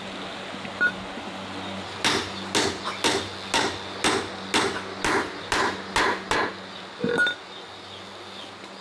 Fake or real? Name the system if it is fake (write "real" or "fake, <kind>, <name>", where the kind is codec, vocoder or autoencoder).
real